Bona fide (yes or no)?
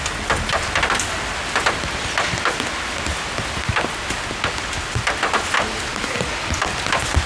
yes